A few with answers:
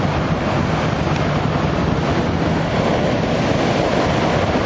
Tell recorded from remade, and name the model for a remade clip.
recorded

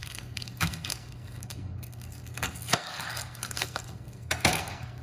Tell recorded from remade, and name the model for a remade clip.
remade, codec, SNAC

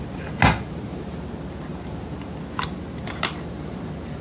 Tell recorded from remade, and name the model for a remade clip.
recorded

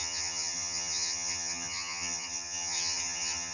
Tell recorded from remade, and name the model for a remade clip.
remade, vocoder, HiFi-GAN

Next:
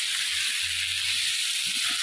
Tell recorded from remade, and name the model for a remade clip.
recorded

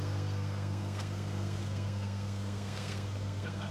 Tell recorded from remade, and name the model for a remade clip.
remade, codec, SNAC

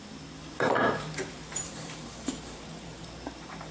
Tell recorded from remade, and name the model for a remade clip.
remade, vocoder, BigVGAN v2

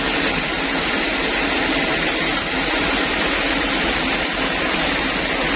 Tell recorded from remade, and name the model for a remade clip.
recorded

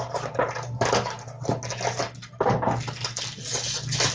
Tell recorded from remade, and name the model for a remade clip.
recorded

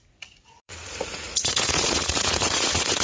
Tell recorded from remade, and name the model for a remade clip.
remade, vocoder, Vocos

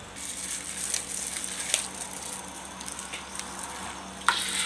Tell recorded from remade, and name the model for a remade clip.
recorded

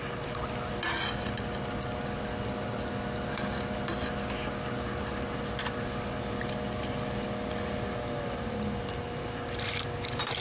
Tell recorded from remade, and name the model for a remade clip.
recorded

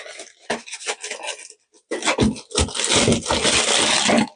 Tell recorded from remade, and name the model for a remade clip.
recorded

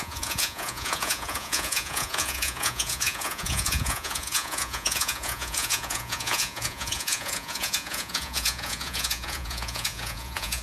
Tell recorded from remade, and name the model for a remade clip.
remade, vocoder, Vocos